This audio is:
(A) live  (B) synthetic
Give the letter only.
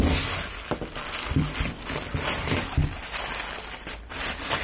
A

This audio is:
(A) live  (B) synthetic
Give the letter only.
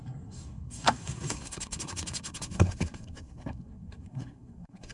B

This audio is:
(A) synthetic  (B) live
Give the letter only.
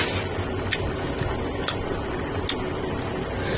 B